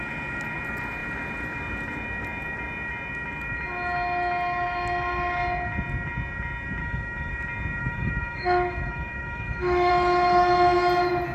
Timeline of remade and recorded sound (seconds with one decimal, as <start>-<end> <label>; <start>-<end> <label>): 0.0-6.8 recorded; 6.8-7.3 remade; 7.3-7.8 recorded; 7.8-9.9 remade; 9.9-11.3 recorded